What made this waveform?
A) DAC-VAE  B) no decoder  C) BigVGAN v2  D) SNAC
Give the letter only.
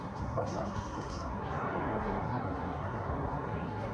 D